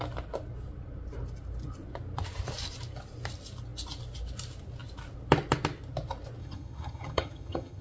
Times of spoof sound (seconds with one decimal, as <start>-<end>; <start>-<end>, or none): 6.4-7.8